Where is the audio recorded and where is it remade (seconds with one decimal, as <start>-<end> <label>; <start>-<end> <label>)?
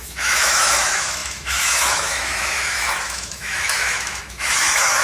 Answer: 0.0-5.0 remade